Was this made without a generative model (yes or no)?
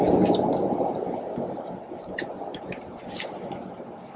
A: yes